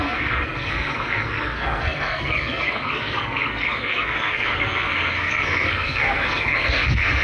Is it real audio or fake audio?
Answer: fake